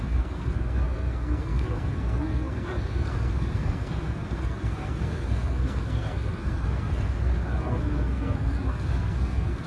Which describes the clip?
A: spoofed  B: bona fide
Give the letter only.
A